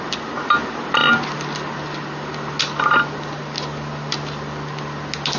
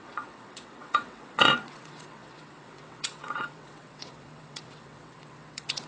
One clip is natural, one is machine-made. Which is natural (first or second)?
first